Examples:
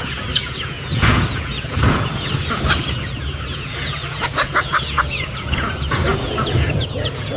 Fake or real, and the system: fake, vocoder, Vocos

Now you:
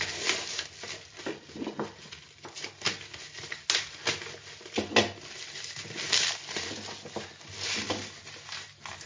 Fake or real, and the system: real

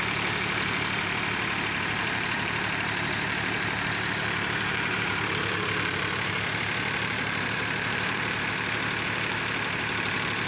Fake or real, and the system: fake, vocoder, BigVGAN v2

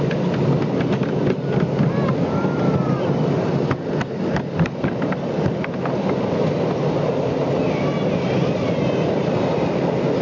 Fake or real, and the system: real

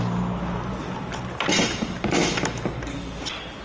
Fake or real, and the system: real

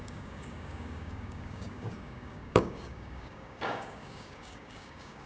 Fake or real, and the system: fake, codec, DAC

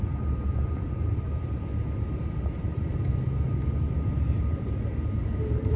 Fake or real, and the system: real